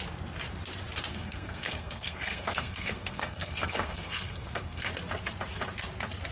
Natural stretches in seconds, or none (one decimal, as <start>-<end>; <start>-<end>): 0.0-1.1; 4.9-6.3